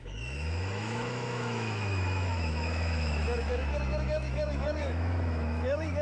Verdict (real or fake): fake